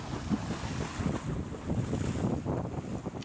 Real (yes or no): yes